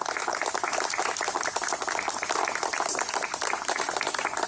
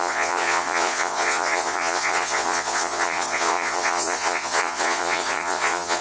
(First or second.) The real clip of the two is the first